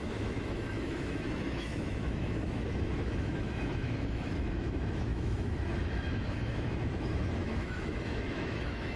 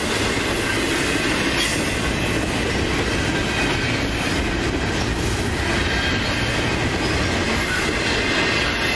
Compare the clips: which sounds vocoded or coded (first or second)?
first